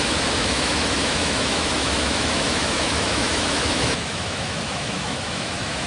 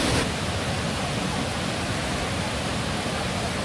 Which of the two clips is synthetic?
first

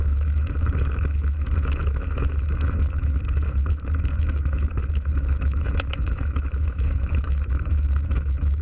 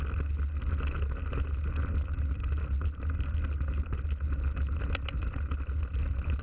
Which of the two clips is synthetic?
first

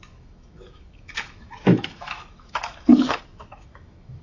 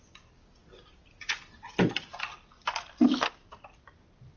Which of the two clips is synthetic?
first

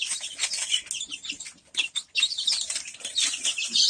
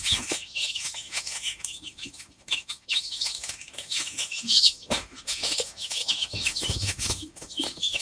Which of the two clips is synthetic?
second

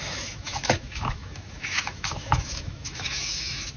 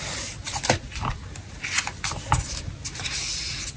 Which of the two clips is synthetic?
first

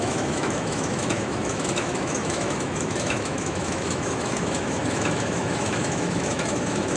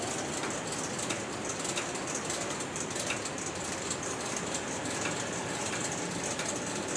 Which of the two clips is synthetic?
first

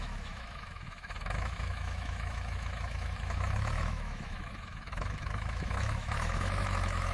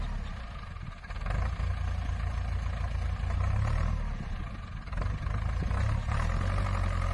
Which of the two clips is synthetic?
first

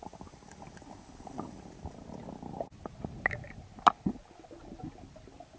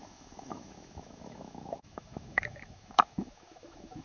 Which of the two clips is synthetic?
second